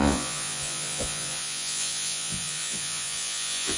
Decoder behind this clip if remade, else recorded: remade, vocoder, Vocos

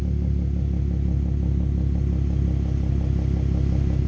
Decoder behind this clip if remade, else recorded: recorded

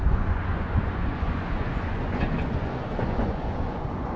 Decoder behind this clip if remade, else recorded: remade, vocoder, Vocos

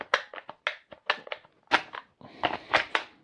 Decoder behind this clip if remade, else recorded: recorded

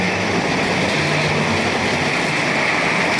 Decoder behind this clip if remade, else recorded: recorded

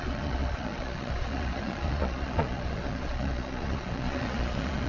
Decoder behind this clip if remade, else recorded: remade, vocoder, Vocos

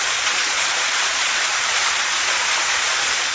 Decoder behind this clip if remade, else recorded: remade, vocoder, Vocos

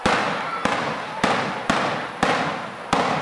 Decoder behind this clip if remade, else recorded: recorded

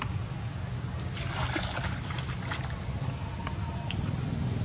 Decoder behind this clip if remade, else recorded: recorded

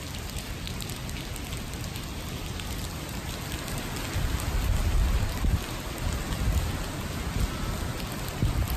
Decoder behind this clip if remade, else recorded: recorded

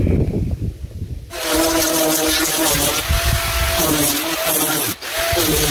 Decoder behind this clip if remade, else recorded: recorded